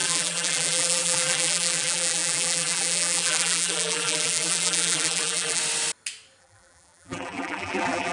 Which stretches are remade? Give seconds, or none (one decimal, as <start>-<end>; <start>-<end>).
0.0-5.6; 6.4-8.1